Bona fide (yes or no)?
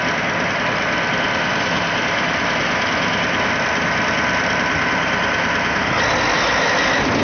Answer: yes